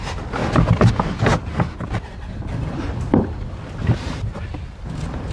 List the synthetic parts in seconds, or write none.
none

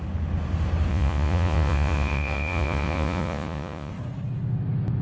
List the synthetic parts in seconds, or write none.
0.9-3.9 (vocoder, Vocos)

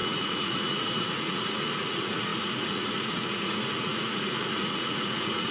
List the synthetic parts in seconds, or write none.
0.0-5.5 (vocoder, Vocos)

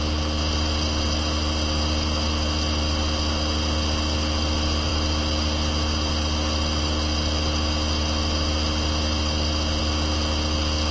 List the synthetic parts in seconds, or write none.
none